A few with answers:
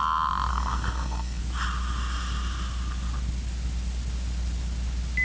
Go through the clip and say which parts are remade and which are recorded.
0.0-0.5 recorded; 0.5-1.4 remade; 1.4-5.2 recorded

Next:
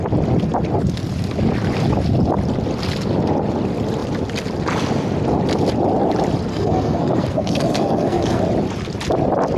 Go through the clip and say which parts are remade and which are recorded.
0.0-6.5 recorded; 6.5-8.4 remade; 8.4-9.6 recorded

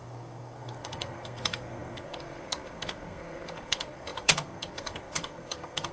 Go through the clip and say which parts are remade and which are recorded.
0.0-5.9 remade

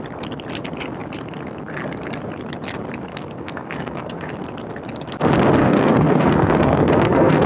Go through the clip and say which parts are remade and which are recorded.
0.0-3.1 recorded; 3.1-4.3 remade; 4.3-5.6 recorded; 5.6-7.5 remade

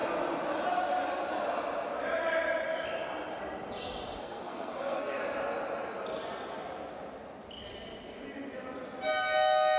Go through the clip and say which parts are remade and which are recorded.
0.0-4.2 recorded; 4.2-5.2 remade; 5.2-9.8 recorded

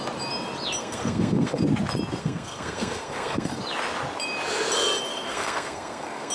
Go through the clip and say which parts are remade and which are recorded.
0.0-0.8 recorded; 0.8-1.6 remade; 1.6-2.2 recorded; 2.2-3.6 remade; 3.6-5.1 recorded; 5.1-6.3 remade